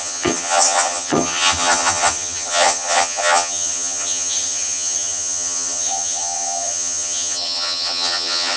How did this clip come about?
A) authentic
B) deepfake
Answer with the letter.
B